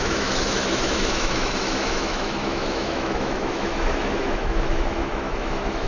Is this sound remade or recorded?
remade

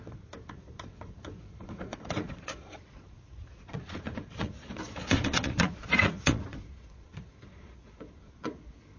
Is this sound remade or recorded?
remade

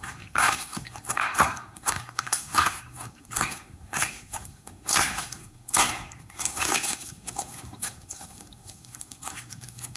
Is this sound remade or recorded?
remade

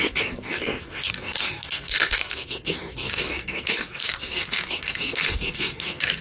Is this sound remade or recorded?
remade